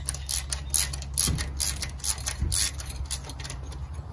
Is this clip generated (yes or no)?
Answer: no